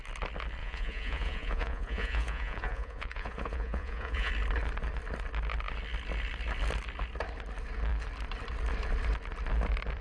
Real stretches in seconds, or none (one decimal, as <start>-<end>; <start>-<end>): 0.0-0.6; 4.3-10.0